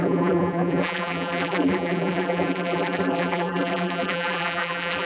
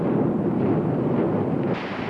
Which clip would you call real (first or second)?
second